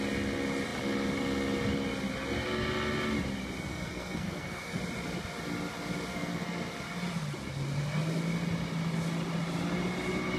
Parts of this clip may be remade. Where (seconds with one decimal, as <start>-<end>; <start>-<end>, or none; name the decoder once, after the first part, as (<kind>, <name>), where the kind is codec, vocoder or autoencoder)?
3.7-4.8 (codec, SNAC); 6.1-6.8